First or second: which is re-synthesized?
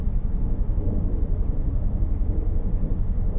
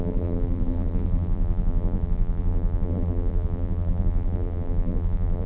second